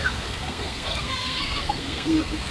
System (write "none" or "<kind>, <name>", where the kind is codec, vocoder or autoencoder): codec, SNAC